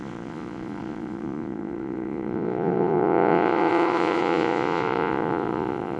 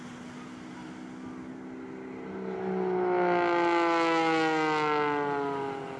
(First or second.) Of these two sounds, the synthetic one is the first